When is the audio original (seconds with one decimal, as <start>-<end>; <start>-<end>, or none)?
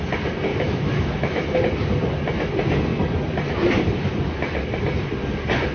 0.0-0.5; 1.6-5.7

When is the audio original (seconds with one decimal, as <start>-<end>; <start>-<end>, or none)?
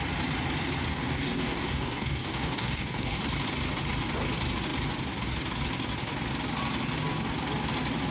0.0-0.9; 3.2-8.1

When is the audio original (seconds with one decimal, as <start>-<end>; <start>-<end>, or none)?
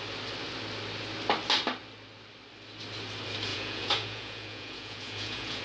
0.0-3.5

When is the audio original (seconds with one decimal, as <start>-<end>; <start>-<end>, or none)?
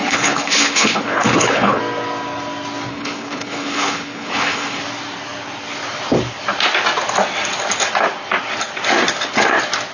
1.8-2.9; 4.8-9.9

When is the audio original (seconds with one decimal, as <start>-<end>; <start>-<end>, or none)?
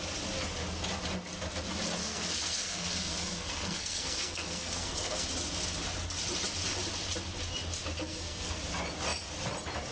0.0-2.0; 5.3-8.0; 8.6-9.9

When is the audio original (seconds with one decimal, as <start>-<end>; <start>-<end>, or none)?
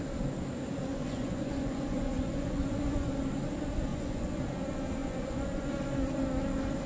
0.0-0.9; 3.1-3.9; 4.4-5.0; 5.7-6.9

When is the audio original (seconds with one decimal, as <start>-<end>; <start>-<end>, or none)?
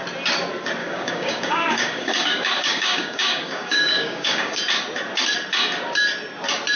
0.0-0.8; 4.6-6.8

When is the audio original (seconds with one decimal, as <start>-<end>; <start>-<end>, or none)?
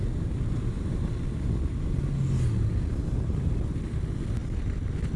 0.0-5.2